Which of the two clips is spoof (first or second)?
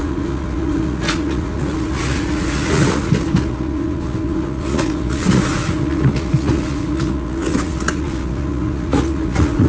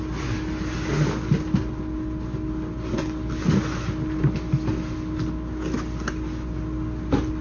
first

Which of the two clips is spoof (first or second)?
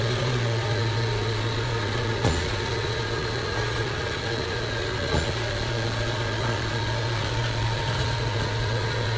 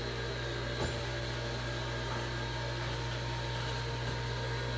first